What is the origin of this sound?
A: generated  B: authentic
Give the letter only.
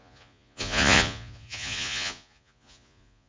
A